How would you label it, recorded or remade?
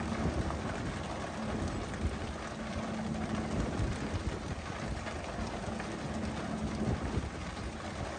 recorded